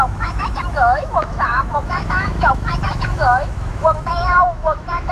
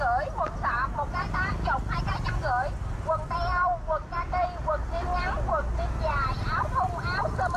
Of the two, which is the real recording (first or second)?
second